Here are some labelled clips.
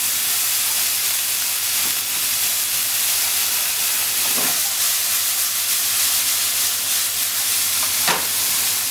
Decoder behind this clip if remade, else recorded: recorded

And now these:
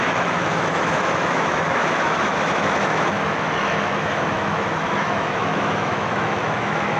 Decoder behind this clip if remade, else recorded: remade, autoencoder, DAC-VAE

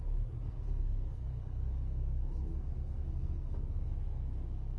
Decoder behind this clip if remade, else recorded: remade, codec, SNAC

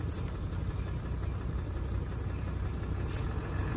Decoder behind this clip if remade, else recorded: recorded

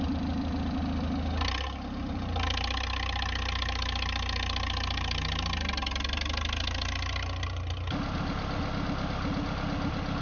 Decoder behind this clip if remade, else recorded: recorded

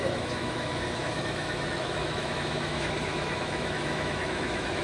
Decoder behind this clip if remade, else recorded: remade, autoencoder, DAC-VAE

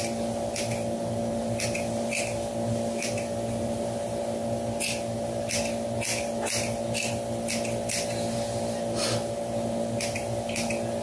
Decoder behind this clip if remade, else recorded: recorded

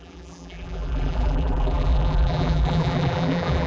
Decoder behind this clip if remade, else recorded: remade, vocoder, BigVGAN v2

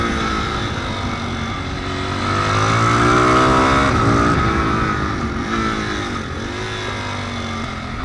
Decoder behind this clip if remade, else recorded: recorded